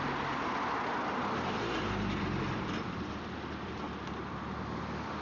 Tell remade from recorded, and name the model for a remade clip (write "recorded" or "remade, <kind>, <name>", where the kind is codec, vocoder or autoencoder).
recorded